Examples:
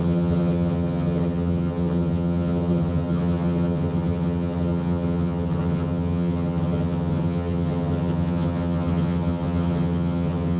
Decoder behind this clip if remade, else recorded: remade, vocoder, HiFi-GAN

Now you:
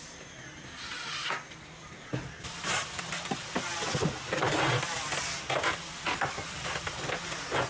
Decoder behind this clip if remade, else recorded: remade, vocoder, BigVGAN v2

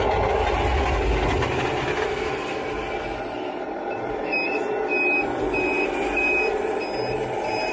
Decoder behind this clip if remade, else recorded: recorded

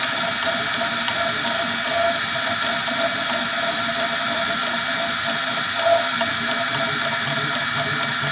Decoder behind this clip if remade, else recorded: recorded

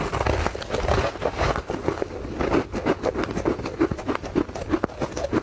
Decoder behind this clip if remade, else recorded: recorded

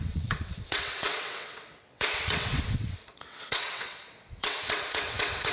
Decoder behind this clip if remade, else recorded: remade, vocoder, WaveNeXt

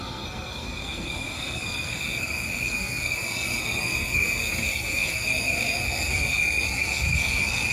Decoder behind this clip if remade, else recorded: remade, codec, SNAC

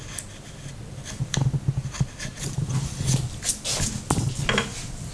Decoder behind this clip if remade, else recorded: recorded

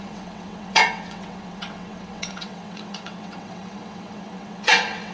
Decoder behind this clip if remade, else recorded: remade, vocoder, WaveNeXt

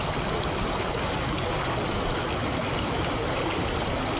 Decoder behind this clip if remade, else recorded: recorded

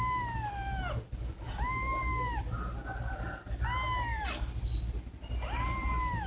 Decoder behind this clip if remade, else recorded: recorded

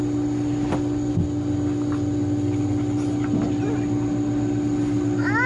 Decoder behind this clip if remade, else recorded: recorded